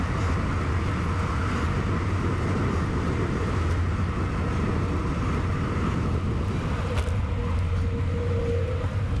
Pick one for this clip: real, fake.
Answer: real